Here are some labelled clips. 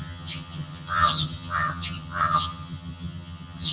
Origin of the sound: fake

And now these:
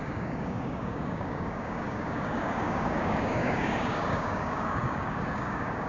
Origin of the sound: fake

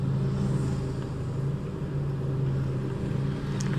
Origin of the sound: real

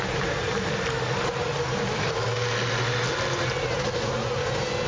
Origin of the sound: real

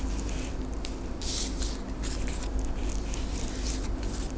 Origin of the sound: real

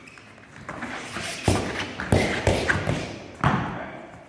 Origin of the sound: real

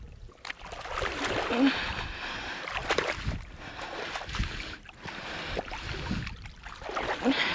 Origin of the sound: real